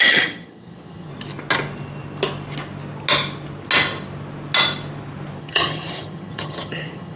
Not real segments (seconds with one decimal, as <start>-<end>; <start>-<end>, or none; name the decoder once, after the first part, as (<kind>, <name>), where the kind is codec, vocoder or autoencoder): 0.0-1.1 (vocoder, HiFi-GAN); 5.4-7.2